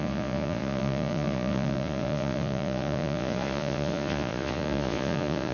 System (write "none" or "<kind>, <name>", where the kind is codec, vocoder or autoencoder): vocoder, Vocos